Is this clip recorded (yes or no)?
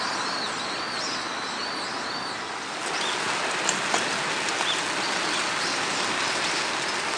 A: yes